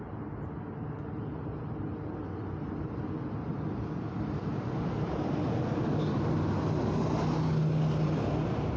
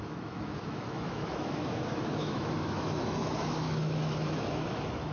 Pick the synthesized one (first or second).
second